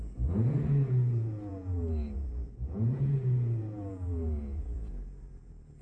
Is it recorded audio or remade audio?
remade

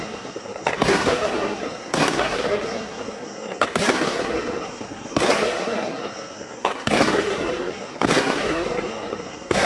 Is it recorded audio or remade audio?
remade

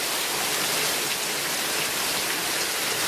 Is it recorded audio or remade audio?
recorded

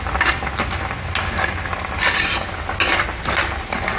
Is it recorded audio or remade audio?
recorded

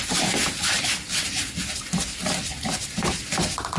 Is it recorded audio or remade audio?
recorded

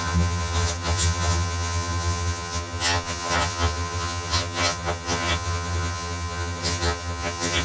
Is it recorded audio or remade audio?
remade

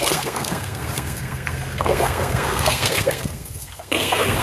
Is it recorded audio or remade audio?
remade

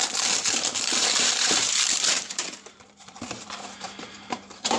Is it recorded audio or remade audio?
remade